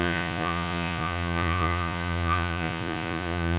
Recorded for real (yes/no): no